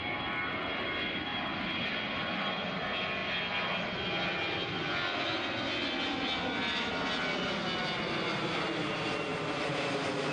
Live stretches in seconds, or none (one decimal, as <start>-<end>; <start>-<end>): 0.0-1.3; 2.5-10.3